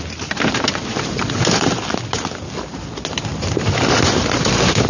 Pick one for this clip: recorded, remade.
recorded